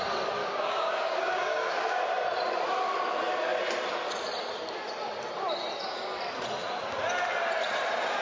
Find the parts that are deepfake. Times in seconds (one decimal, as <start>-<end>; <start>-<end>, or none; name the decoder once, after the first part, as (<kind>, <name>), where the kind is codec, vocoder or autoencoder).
0.4-2.0 (codec, DAC)